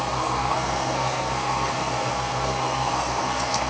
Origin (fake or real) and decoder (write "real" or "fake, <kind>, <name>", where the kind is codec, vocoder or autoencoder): fake, codec, SNAC